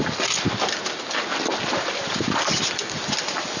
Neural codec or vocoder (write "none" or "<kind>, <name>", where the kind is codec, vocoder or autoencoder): none